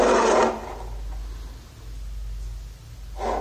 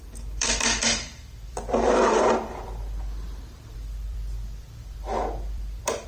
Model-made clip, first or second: second